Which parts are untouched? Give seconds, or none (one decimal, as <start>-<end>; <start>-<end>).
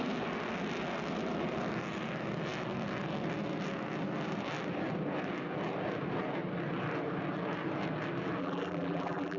0.0-8.4